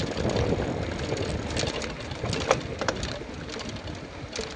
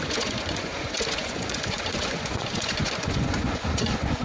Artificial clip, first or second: second